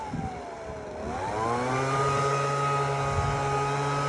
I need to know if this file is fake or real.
real